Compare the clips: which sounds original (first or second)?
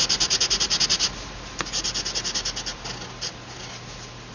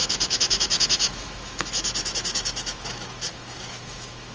first